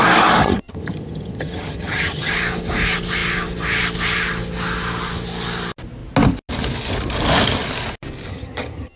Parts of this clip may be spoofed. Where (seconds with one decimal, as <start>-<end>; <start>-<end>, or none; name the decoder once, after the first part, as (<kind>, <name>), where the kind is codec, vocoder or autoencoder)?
0.4-2.3 (vocoder, HiFi-GAN); 8.3-9.0